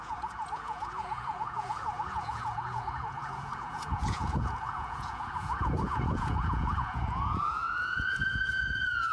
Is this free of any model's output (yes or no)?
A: no